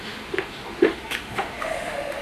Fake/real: fake